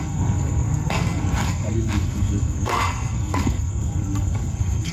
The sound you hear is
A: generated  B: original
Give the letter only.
A